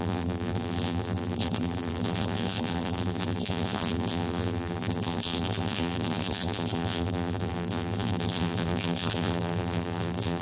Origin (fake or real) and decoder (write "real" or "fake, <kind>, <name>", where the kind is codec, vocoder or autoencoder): fake, vocoder, BigVGAN v2